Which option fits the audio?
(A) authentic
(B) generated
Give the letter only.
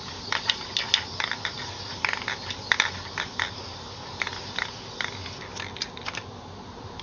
A